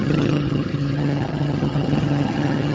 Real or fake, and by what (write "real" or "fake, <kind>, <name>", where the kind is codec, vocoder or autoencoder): fake, vocoder, HiFi-GAN